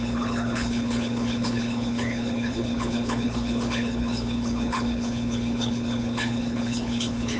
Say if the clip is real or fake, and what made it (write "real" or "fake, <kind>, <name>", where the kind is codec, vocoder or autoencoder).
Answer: fake, codec, HILCodec